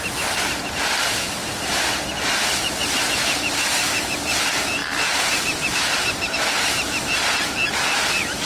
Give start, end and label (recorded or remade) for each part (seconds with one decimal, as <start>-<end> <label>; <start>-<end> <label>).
0.0-1.4 recorded; 1.4-1.9 remade; 1.9-4.8 recorded; 4.8-6.7 remade; 6.7-8.5 recorded